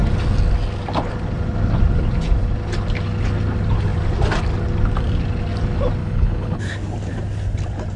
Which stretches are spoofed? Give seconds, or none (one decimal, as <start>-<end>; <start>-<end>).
6.0-6.6

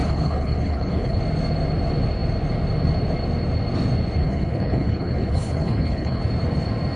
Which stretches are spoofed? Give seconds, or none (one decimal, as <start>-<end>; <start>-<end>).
0.0-1.2; 4.2-6.2